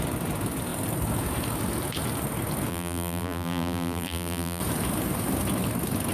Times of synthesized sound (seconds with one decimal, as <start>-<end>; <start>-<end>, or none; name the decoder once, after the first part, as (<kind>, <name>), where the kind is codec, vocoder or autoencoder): 2.7-4.6 (vocoder, BigVGAN v2)